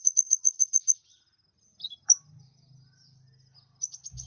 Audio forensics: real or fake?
real